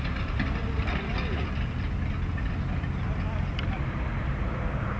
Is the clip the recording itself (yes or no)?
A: yes